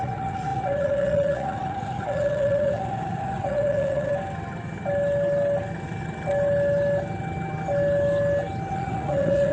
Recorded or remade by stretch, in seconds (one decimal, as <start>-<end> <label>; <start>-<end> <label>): 0.0-4.1 remade; 4.1-8.7 recorded; 8.7-9.5 remade